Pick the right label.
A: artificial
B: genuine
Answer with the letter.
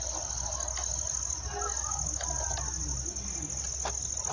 B